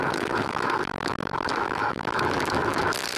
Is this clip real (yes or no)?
no